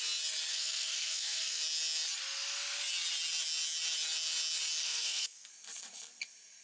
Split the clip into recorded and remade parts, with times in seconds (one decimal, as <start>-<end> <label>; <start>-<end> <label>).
0.0-0.5 recorded; 0.5-1.6 remade; 1.6-4.8 recorded; 4.8-5.5 remade; 5.5-6.6 recorded